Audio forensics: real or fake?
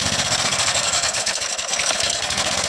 fake